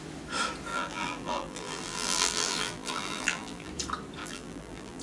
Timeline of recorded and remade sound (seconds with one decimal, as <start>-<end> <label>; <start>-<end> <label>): 0.0-0.7 recorded; 0.7-3.7 remade; 3.7-4.2 recorded; 4.2-5.0 remade